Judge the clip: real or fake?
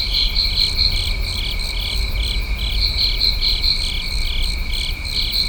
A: real